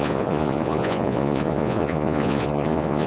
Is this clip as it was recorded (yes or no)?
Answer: no